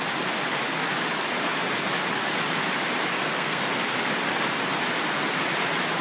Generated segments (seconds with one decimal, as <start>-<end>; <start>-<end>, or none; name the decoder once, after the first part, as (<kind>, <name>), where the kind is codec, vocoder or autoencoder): 3.1-3.6 (codec, SNAC)